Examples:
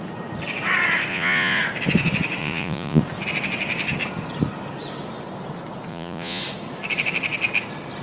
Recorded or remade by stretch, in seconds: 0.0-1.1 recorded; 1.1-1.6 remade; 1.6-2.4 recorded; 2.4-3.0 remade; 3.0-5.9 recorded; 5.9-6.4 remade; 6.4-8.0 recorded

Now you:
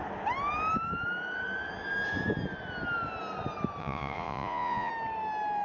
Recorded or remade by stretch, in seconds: 0.0-3.8 recorded; 3.8-4.9 remade; 4.9-5.6 recorded

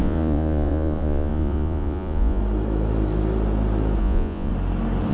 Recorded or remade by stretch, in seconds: 0.0-2.4 remade; 2.4-4.0 recorded; 4.0-4.5 remade; 4.5-5.1 recorded

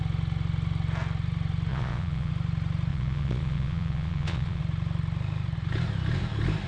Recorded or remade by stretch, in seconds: 0.0-1.7 recorded; 1.7-2.3 remade; 2.3-2.9 recorded; 2.9-4.6 remade; 4.6-6.7 recorded

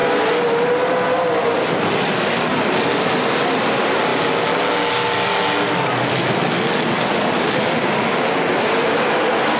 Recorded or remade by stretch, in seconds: 0.0-9.6 recorded

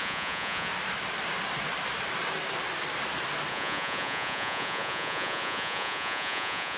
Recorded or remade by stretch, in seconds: 0.0-0.7 remade; 0.7-3.5 recorded; 3.5-6.8 remade

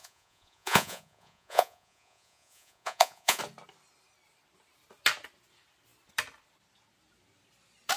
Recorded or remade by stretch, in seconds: 0.0-3.4 remade; 3.4-8.0 recorded